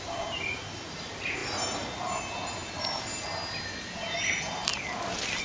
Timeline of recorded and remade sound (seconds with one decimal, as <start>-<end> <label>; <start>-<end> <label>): 0.0-5.4 recorded